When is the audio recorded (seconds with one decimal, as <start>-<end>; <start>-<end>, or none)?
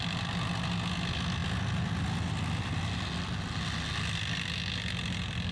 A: 0.0-5.5